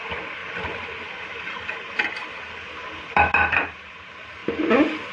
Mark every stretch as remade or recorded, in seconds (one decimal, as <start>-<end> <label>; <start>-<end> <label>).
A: 0.0-4.4 recorded; 4.4-5.1 remade